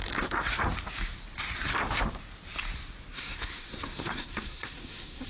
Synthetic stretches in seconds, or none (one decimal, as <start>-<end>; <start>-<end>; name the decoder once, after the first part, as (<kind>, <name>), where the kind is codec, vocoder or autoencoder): 3.1-5.3 (codec, SNAC)